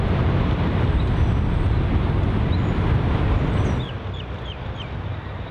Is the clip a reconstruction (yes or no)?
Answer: no